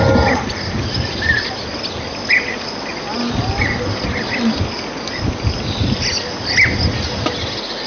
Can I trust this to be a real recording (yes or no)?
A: yes